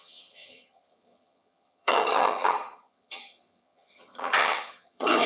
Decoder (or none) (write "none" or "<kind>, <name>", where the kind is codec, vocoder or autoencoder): vocoder, HiFi-GAN